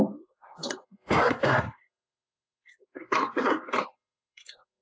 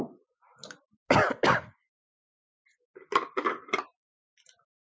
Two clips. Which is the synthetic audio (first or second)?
first